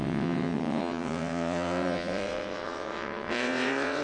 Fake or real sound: fake